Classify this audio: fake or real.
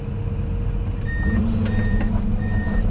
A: real